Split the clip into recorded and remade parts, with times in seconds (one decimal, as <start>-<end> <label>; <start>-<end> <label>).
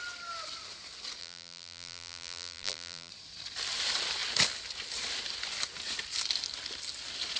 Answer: 0.0-1.2 recorded; 1.2-3.1 remade; 3.1-7.4 recorded